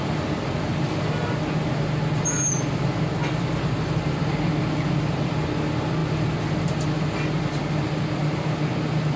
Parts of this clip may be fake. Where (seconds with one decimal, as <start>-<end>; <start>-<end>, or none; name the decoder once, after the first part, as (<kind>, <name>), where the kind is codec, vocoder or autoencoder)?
none